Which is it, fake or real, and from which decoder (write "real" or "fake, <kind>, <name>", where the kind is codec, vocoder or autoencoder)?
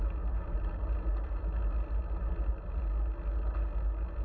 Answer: real